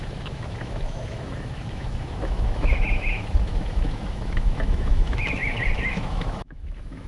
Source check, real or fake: fake